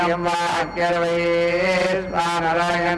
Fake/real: real